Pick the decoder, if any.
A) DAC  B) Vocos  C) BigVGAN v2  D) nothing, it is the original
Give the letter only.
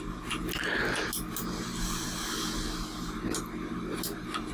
D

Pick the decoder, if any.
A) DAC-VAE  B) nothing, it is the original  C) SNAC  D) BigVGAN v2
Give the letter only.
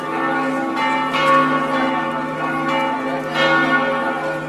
B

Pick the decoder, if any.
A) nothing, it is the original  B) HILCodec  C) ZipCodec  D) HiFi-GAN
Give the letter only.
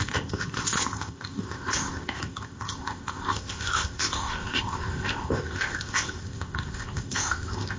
C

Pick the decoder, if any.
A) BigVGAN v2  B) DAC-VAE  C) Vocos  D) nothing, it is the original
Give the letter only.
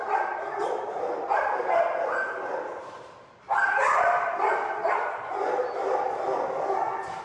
D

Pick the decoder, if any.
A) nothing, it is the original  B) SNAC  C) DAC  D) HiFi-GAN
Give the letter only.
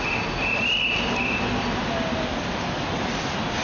A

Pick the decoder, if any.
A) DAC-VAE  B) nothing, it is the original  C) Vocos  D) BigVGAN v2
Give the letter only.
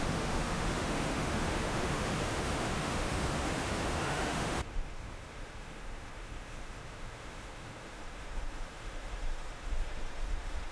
A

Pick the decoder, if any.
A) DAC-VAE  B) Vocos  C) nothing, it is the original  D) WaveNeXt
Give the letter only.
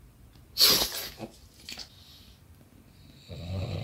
C